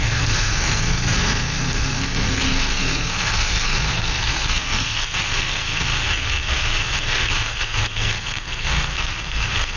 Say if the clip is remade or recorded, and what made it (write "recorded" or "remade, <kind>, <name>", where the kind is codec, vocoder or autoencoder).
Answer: remade, codec, SNAC